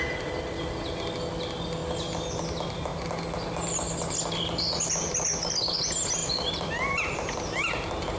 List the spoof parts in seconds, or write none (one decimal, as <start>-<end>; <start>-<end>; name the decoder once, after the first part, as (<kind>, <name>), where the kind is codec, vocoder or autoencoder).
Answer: 6.2-6.7 (vocoder, BigVGAN v2)